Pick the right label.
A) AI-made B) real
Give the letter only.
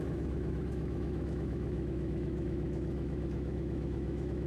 A